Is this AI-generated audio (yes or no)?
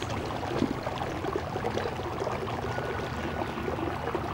no